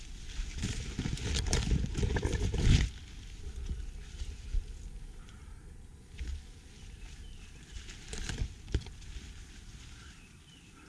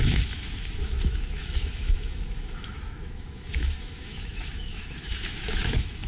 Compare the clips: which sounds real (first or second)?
first